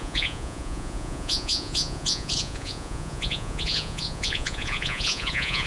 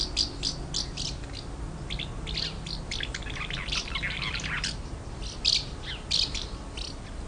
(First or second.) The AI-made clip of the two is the first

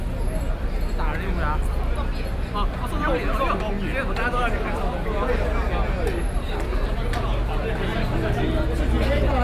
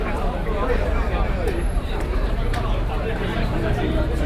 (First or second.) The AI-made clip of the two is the second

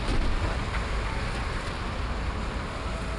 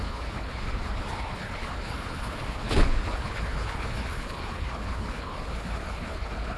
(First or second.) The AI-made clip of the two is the second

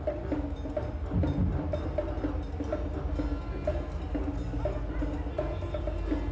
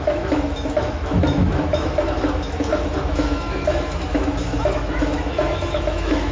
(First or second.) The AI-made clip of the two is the second